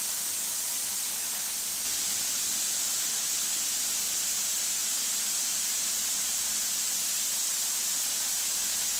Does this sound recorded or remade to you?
recorded